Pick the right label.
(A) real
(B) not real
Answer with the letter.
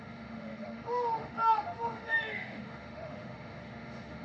B